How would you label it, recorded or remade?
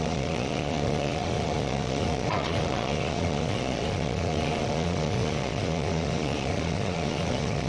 remade